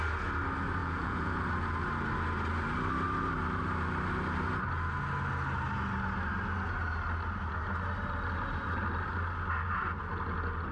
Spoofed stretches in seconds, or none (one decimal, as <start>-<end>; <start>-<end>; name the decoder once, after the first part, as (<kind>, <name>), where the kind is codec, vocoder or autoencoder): 0.8-1.4 (vocoder, Vocos)